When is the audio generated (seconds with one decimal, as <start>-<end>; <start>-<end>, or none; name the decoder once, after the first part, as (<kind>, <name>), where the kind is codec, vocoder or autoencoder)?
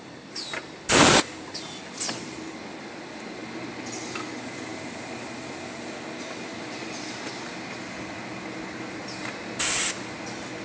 none